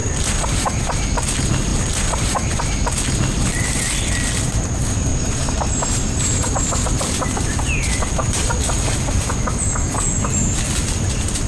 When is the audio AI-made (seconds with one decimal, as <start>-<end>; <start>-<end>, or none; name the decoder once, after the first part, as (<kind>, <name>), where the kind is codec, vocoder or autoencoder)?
0.0-0.8 (vocoder, BigVGAN v2); 1.7-2.6; 5.1-8.4